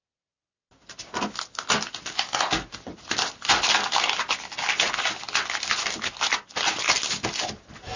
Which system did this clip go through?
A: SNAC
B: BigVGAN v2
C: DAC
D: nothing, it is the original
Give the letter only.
D